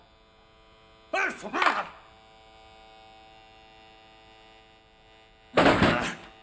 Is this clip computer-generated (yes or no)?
no